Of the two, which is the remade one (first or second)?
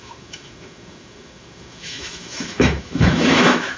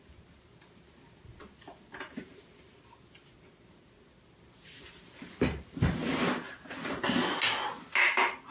first